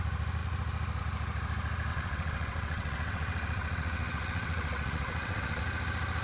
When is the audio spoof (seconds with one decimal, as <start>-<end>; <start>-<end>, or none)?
1.9-5.6